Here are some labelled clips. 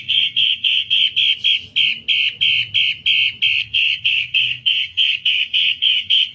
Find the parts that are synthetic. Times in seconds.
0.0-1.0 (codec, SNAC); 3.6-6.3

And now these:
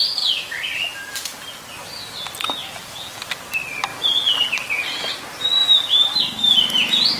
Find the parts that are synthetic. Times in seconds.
0.0-1.5 (vocoder, BigVGAN v2); 2.6-3.4; 3.9-4.7; 5.6-6.2